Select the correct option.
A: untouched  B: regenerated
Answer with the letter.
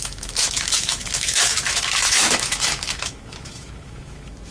B